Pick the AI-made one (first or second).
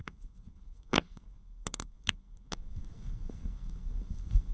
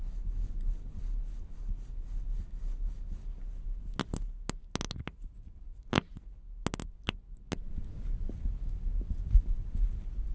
first